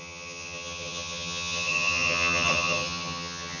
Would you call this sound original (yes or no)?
no